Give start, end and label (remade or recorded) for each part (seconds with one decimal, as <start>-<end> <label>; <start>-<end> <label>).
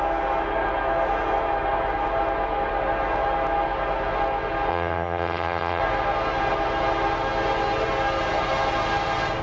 0.0-4.7 recorded; 4.7-5.8 remade; 5.8-9.4 recorded